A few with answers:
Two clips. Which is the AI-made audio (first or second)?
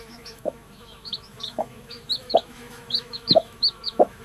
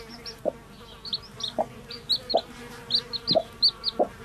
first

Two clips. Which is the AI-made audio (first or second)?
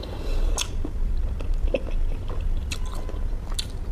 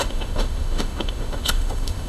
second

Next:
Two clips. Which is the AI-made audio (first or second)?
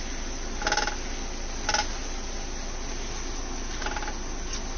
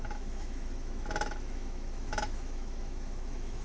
second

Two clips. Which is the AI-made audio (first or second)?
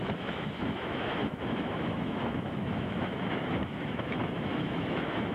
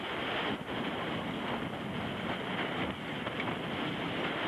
first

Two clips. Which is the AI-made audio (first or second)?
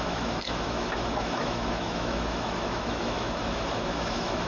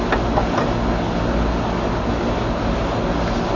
first